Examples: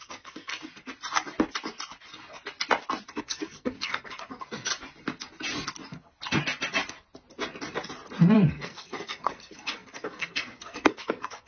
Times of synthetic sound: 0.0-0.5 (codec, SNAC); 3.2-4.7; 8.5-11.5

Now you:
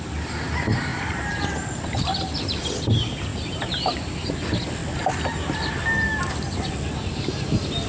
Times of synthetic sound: 0.9-2.2 (vocoder, BigVGAN v2); 3.3-4.3

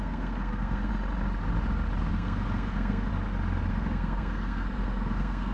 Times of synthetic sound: 0.0-0.9 (codec, SNAC); 2.1-3.1; 3.7-5.5

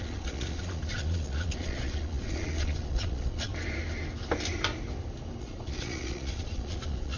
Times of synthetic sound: 0.0-3.5 (vocoder, Vocos); 5.4-7.2